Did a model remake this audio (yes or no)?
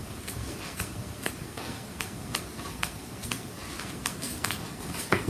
yes